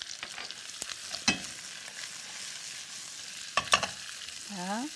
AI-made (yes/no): no